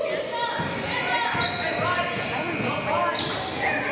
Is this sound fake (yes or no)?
no